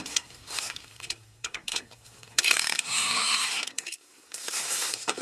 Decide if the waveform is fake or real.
fake